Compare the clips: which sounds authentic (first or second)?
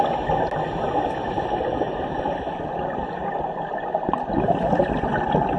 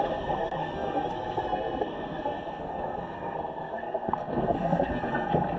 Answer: first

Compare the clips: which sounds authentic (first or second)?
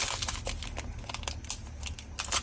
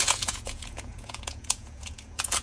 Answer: first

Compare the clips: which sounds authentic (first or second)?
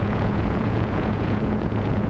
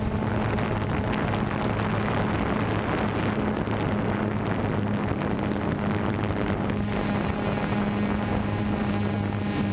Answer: second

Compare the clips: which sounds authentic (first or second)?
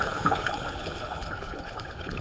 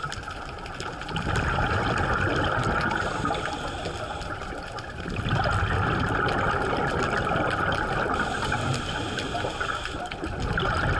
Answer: second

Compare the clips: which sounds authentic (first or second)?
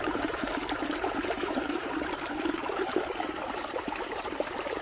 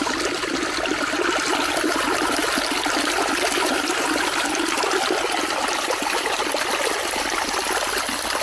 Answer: second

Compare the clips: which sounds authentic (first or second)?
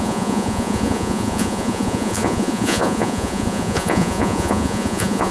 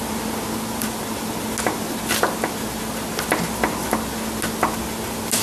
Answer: second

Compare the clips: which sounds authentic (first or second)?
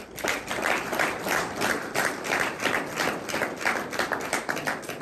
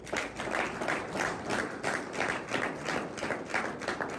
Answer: second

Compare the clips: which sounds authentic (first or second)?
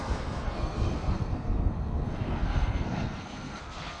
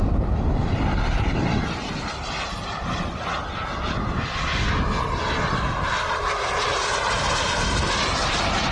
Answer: second